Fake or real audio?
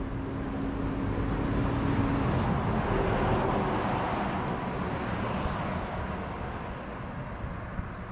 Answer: real